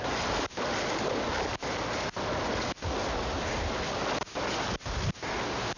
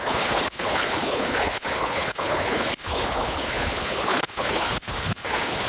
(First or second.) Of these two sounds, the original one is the first